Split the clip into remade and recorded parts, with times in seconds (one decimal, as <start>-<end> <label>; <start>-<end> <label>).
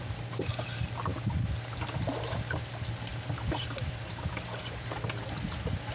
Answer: 0.0-5.9 recorded